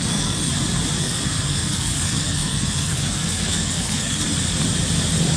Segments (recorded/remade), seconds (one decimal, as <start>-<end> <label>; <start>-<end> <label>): 0.0-0.5 remade; 0.5-1.0 recorded; 1.0-4.2 remade; 4.2-5.4 recorded